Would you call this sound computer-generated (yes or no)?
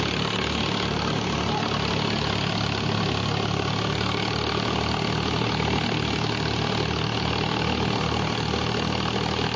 no